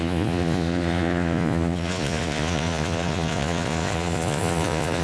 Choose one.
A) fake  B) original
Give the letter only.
A